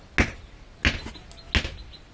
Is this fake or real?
real